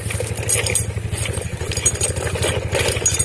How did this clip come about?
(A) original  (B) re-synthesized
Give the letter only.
A